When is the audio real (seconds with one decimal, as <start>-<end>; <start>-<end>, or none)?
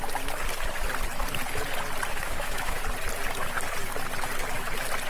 0.0-2.1; 2.8-5.1